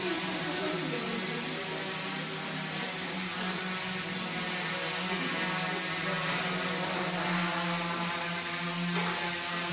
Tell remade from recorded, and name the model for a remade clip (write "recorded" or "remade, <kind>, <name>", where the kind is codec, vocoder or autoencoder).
recorded